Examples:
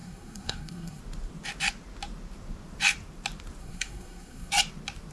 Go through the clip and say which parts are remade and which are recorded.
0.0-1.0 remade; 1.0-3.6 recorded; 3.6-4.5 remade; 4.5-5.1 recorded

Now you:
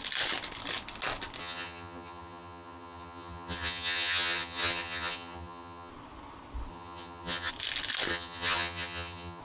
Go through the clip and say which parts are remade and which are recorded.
0.0-1.4 recorded; 1.4-5.9 remade; 5.9-6.7 recorded; 6.7-7.5 remade; 7.5-8.1 recorded; 8.1-9.4 remade

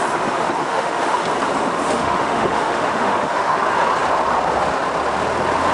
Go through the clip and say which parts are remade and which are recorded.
0.0-0.7 recorded; 0.7-1.2 remade; 1.2-1.8 recorded; 1.8-3.6 remade; 3.6-5.7 recorded

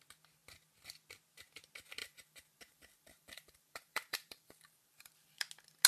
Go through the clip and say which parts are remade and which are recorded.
0.0-2.0 recorded; 2.0-5.5 remade; 5.5-5.9 recorded